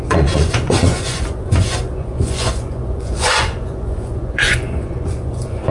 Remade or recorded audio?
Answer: remade